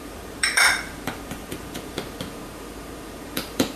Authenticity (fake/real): fake